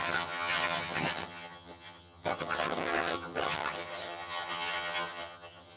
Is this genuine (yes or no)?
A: no